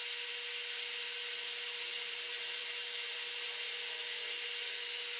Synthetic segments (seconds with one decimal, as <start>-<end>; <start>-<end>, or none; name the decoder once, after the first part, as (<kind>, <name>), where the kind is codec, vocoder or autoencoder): none